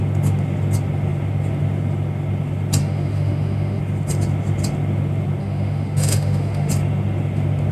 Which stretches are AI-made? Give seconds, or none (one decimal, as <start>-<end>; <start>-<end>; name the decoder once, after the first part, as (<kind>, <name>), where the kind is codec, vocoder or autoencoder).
2.8-3.8 (autoencoder, DAC-VAE); 5.4-6.7